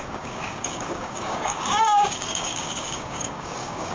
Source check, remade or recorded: remade